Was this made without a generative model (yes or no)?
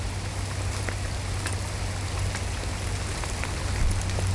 yes